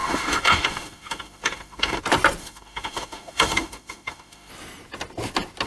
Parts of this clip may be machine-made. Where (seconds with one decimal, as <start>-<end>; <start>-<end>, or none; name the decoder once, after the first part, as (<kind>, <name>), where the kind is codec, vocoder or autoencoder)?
0.0-2.0 (autoencoder, DAC-VAE); 2.4-4.5